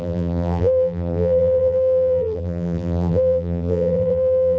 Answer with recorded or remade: remade